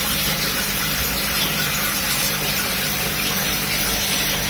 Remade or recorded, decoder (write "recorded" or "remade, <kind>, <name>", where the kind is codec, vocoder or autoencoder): remade, vocoder, BigVGAN v2